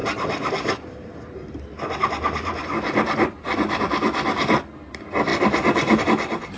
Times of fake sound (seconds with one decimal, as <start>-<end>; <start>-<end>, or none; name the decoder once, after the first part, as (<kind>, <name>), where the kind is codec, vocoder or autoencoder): 0.0-3.8 (vocoder, BigVGAN v2); 5.3-6.0